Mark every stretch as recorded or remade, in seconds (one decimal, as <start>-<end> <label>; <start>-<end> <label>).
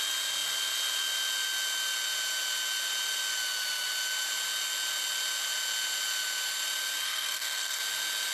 0.0-7.0 recorded; 7.0-7.8 remade; 7.8-8.3 recorded